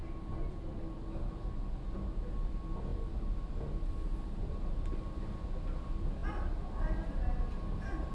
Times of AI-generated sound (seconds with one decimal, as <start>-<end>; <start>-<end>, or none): none